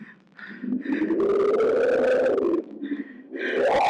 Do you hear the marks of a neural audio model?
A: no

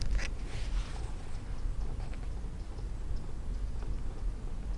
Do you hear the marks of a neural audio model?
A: no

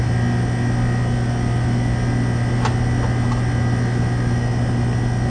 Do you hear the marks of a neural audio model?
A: no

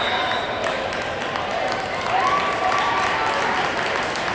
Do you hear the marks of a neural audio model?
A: no